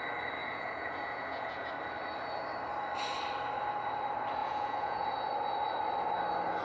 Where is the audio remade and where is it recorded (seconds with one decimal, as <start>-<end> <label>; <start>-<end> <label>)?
0.0-0.4 recorded; 0.4-1.7 remade; 1.7-4.4 recorded; 4.4-5.2 remade; 5.2-6.6 recorded